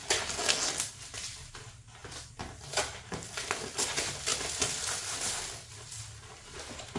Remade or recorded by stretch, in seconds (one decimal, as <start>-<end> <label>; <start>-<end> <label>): 0.0-7.0 recorded